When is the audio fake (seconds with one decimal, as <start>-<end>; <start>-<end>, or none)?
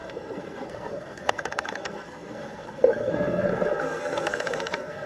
0.0-5.1